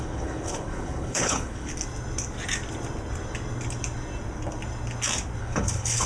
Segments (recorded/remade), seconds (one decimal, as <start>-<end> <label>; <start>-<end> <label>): 0.0-1.7 remade; 1.7-5.4 recorded; 5.4-6.1 remade